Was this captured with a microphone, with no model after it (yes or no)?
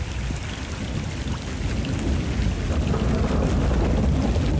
yes